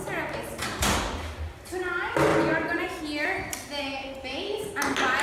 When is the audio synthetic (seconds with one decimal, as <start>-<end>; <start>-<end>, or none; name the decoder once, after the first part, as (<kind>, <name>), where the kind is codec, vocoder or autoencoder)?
none